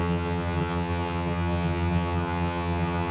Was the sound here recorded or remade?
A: remade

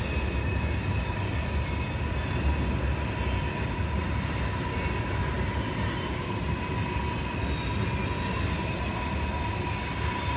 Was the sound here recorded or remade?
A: recorded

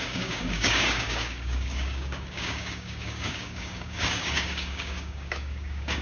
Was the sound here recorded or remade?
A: remade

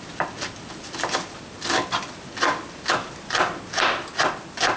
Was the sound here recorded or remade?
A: recorded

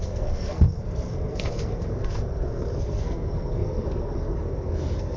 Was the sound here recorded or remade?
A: remade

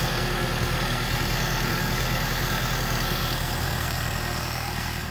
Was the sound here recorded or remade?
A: remade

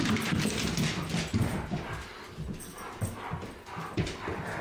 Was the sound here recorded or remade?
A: recorded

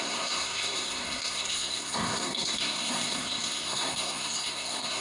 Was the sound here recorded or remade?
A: remade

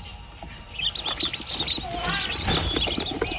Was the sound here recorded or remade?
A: recorded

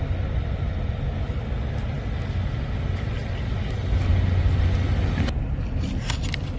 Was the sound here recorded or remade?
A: recorded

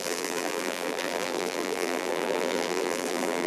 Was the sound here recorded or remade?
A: remade